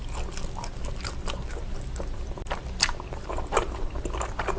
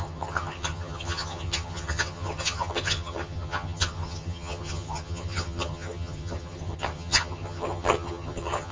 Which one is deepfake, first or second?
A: second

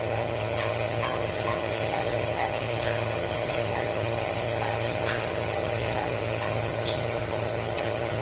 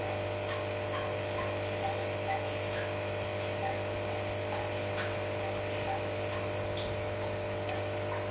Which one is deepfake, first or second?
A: first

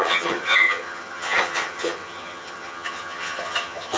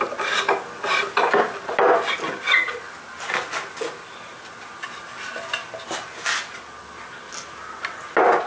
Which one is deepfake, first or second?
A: first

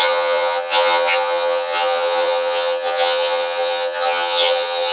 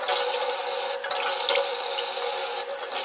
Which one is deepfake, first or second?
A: first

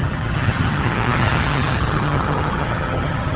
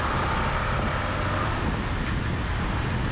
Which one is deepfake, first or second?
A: first